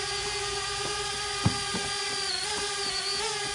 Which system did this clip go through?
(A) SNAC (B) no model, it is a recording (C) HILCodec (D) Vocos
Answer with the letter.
B